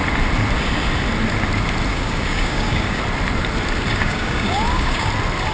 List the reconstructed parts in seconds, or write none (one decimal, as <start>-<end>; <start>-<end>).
1.9-3.0; 3.9-5.1